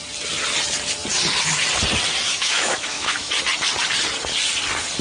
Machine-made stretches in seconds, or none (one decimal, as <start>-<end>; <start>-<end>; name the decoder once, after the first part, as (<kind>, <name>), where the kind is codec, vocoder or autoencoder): 2.3-3.3 (autoencoder, DAC-VAE)